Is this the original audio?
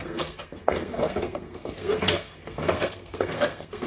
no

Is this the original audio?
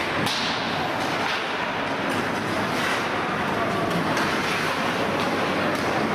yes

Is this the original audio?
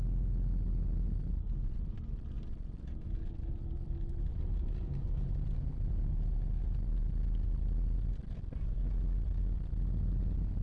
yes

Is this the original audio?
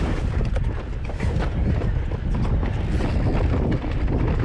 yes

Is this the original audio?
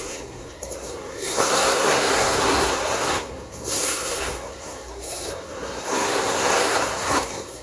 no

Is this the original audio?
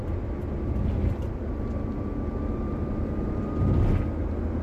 yes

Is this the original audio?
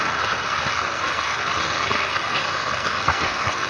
no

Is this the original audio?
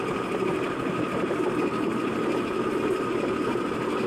yes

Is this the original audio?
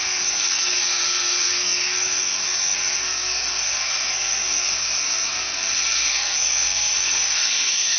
no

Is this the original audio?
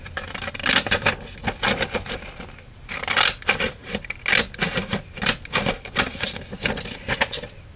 yes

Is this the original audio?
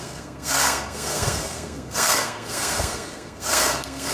no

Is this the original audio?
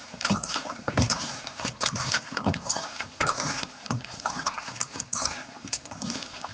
no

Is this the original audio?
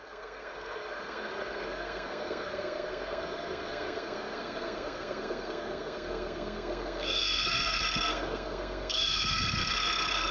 no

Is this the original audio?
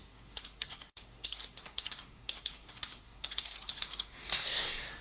no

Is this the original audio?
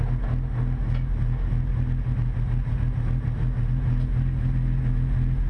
yes